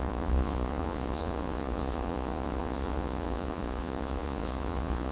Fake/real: fake